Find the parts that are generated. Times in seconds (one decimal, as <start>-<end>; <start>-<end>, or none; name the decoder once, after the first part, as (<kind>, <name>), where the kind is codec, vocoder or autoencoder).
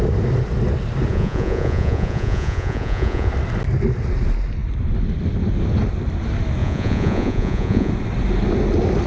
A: 1.1-3.3 (vocoder, Vocos); 6.6-7.9